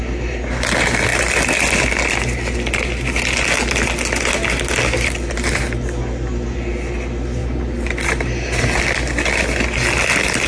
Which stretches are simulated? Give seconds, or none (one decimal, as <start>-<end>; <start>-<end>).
7.4-7.9